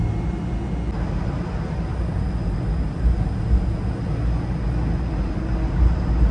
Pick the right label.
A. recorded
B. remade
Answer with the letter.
A